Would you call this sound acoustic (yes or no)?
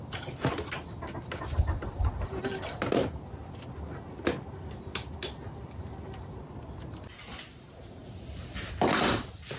yes